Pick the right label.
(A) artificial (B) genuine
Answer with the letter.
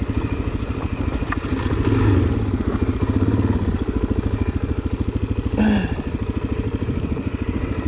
B